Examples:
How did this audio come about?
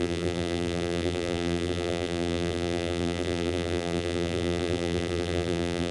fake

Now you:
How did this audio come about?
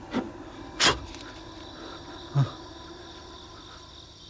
real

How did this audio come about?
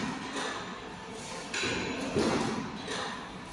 real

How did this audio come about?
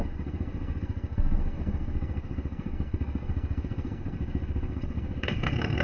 fake